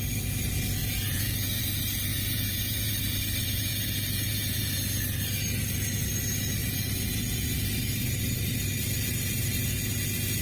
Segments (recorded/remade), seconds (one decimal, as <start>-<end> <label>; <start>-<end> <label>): 0.0-0.8 recorded; 0.8-1.6 remade; 1.6-2.1 recorded; 2.1-2.9 remade; 2.9-3.4 recorded; 3.4-4.7 remade; 4.7-6.6 recorded; 6.6-7.7 remade; 7.7-10.4 recorded